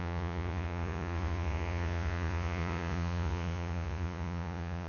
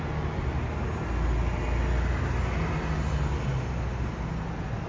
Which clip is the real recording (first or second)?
second